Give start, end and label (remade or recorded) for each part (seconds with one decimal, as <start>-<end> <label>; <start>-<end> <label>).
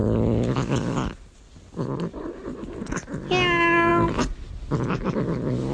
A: 0.0-5.7 recorded